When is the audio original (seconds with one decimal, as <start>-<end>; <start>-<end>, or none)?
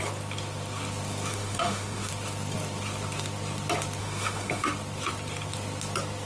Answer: 0.0-1.3; 2.1-4.0; 4.7-6.3